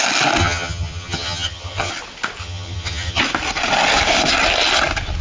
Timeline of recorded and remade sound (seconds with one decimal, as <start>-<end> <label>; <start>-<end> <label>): 0.0-0.4 recorded; 0.4-1.9 remade; 1.9-2.4 recorded; 2.4-3.2 remade; 3.2-5.2 recorded